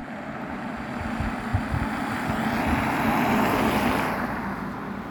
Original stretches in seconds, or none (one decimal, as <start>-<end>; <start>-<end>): 0.6-5.1